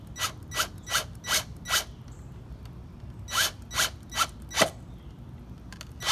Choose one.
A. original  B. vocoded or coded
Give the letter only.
A